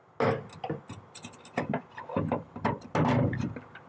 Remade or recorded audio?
recorded